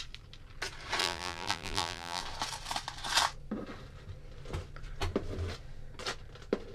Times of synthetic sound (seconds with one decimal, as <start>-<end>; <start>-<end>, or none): 1.0-2.2